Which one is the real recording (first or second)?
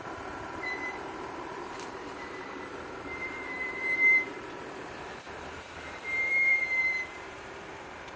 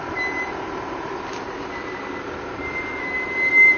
second